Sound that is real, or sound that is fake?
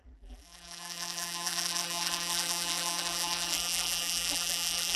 fake